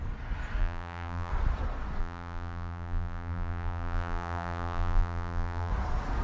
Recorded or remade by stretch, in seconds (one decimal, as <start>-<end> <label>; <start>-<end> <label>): 0.0-0.6 recorded; 0.6-1.3 remade; 1.3-2.0 recorded; 2.0-5.7 remade; 5.7-6.2 recorded